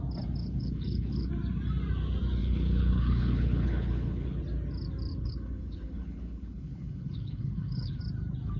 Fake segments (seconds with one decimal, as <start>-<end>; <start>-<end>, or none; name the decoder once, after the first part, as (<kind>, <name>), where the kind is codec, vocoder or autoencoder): 0.4-1.3 (codec, HILCodec); 2.4-4.4; 5.1-8.0